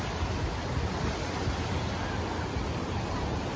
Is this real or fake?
real